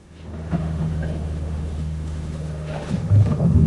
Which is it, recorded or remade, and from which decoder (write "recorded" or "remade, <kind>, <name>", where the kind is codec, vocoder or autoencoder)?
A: remade, autoencoder, DAC-VAE